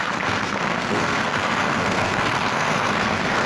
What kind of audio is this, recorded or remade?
remade